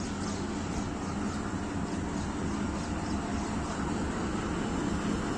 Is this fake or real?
real